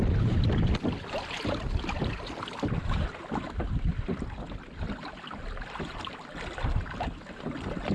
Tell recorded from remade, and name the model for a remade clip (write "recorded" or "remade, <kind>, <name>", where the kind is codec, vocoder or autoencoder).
recorded